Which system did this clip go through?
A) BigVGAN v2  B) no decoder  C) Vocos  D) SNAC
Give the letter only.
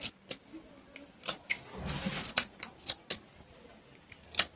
B